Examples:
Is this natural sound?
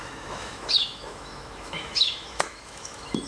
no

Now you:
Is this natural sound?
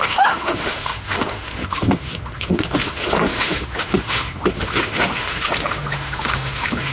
no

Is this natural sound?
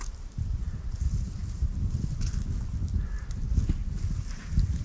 yes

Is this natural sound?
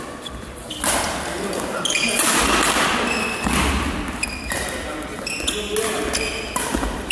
yes